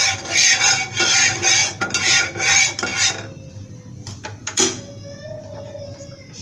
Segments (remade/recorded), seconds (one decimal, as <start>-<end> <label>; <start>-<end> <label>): 0.0-1.6 recorded; 1.6-2.2 remade; 2.2-4.4 recorded; 4.4-5.2 remade; 5.2-6.4 recorded